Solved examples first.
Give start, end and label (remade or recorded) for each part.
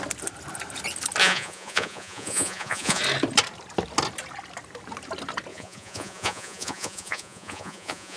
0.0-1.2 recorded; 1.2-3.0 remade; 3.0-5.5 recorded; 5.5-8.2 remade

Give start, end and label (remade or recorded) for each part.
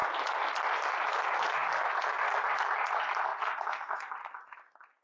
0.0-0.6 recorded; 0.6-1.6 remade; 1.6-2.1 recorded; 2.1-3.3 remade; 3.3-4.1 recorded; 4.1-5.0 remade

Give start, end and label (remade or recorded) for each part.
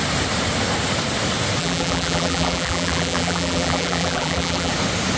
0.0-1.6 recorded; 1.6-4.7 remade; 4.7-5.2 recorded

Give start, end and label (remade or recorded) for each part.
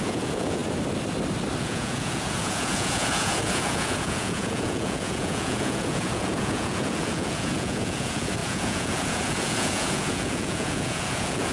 0.0-0.6 remade; 0.6-1.6 recorded; 1.6-11.5 remade